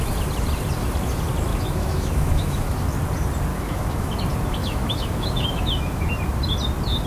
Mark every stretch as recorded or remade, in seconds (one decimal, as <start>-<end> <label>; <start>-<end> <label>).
0.0-1.5 recorded; 1.5-2.7 remade; 2.7-3.5 recorded; 3.5-4.1 remade; 4.1-4.6 recorded; 4.6-6.1 remade; 6.1-7.1 recorded